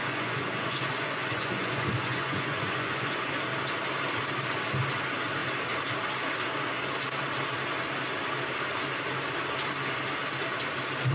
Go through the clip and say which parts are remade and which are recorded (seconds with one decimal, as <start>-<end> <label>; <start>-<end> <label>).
0.0-3.3 remade; 3.3-11.1 recorded